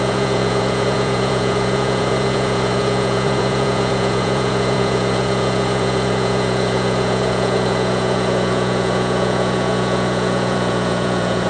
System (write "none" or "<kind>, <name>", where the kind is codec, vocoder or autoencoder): vocoder, Vocos